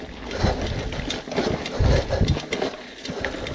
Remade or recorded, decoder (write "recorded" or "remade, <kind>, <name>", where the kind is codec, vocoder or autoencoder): recorded